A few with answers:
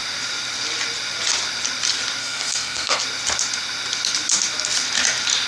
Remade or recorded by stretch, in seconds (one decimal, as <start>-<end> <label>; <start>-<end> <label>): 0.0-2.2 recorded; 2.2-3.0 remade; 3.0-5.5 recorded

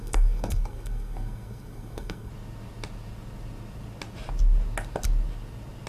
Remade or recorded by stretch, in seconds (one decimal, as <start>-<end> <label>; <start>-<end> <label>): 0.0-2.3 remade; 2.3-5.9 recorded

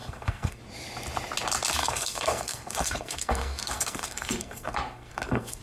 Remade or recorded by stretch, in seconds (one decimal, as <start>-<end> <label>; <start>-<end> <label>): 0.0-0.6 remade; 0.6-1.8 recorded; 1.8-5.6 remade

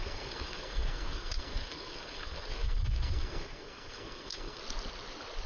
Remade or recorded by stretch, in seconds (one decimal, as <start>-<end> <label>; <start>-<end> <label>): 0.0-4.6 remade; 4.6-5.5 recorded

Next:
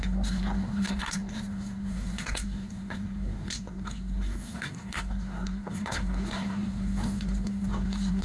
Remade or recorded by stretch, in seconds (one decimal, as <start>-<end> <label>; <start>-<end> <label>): 0.0-8.2 remade